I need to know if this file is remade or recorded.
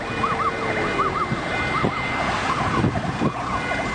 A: recorded